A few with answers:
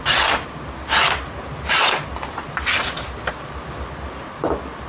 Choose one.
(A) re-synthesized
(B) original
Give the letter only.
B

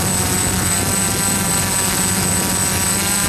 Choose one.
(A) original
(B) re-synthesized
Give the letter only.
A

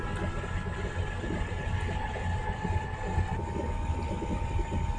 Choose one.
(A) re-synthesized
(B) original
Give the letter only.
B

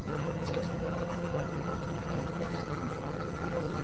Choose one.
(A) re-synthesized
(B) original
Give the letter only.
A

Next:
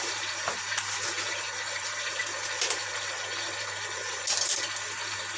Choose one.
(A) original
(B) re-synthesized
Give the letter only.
B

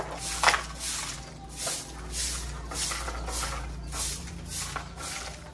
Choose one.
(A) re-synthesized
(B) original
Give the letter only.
B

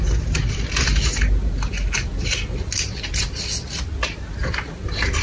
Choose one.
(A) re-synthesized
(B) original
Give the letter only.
B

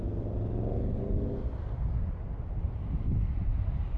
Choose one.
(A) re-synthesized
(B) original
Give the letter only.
A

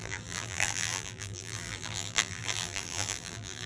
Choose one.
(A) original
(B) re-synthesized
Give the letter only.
B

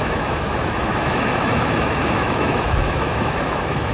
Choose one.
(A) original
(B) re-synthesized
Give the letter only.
B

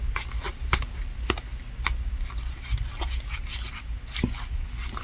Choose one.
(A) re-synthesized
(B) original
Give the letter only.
B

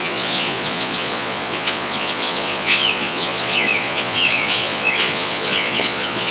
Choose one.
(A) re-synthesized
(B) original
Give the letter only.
A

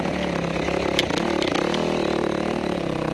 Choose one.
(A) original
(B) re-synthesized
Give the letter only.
A